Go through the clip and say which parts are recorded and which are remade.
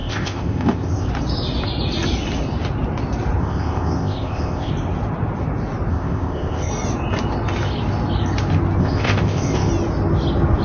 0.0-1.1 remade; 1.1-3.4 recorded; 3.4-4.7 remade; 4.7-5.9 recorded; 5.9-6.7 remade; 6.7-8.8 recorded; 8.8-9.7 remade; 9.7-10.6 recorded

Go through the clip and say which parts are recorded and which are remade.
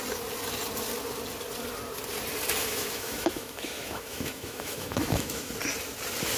0.0-2.6 recorded; 2.6-5.5 remade; 5.5-6.4 recorded